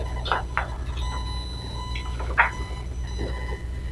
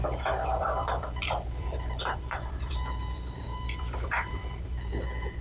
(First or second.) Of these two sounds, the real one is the first